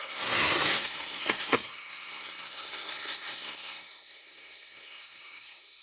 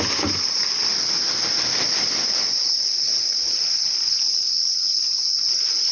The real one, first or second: second